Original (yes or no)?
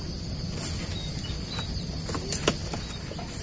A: yes